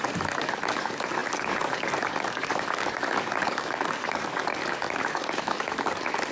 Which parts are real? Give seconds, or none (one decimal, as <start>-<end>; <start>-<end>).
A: none